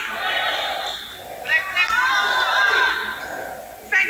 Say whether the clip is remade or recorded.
recorded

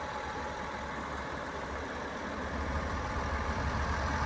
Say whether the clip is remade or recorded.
remade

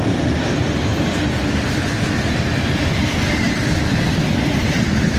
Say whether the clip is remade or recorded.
remade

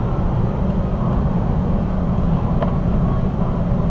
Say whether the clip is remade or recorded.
recorded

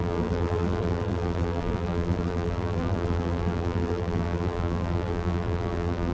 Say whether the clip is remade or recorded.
remade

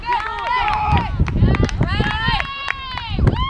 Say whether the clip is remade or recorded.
recorded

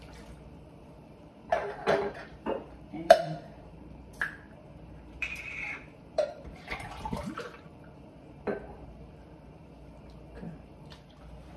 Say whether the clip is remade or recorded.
remade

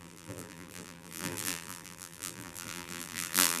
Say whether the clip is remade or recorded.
remade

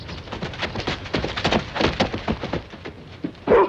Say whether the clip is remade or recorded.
recorded